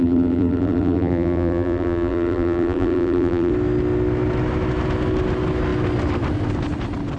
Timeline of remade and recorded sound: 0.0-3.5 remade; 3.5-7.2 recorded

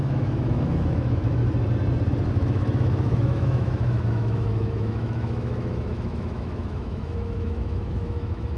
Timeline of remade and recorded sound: 0.0-1.4 remade; 1.4-2.3 recorded; 2.3-8.6 remade

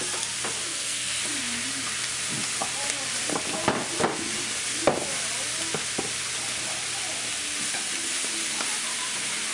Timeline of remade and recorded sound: 0.0-0.6 recorded; 0.6-1.2 remade; 1.2-9.5 recorded

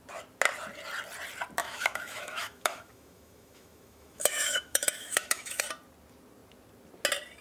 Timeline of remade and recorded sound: 0.0-1.6 recorded; 1.6-5.6 remade; 5.6-7.4 recorded

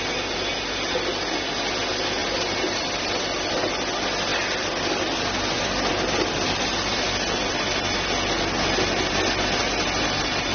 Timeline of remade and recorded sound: 0.0-10.5 recorded